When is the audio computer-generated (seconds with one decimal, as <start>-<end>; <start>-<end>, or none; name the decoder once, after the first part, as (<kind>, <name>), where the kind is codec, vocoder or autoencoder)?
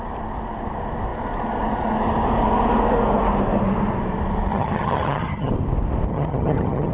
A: 4.5-5.5 (vocoder, HiFi-GAN); 6.1-6.9